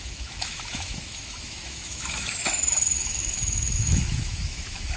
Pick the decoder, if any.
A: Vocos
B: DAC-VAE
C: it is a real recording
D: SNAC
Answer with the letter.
B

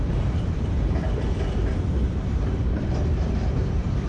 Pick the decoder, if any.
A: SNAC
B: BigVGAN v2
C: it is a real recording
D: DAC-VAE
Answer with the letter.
B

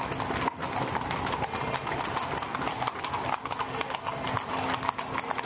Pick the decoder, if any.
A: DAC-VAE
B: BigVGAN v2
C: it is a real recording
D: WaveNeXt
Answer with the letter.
C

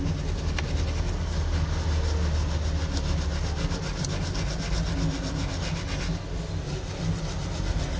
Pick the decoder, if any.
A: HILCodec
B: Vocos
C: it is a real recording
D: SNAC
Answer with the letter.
C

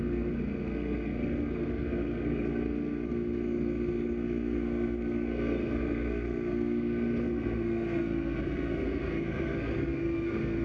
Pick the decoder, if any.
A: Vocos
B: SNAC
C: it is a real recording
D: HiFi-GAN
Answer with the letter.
B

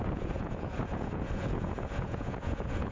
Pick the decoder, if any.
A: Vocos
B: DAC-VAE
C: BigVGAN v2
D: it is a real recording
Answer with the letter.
A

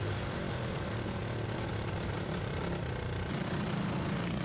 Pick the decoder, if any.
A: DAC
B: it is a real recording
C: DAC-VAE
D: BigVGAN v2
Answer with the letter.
D